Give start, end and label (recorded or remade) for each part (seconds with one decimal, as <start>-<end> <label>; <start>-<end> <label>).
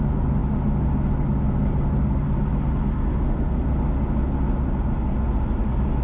0.0-6.0 recorded